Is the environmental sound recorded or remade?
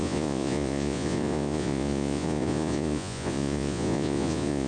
remade